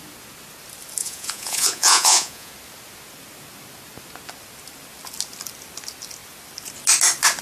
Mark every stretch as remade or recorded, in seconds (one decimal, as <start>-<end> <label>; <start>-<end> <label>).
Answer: 0.0-1.0 recorded; 1.0-2.5 remade; 2.5-7.4 recorded